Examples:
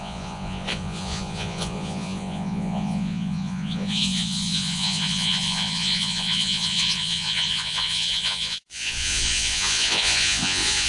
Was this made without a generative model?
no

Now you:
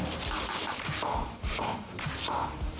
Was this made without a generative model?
no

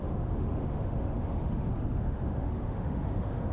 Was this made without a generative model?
no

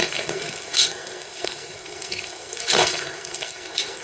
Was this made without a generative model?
no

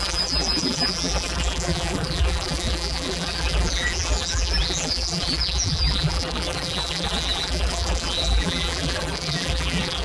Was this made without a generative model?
no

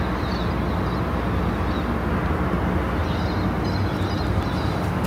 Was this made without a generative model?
yes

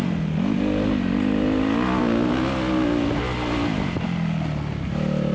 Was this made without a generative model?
yes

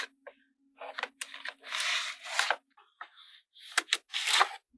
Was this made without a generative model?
yes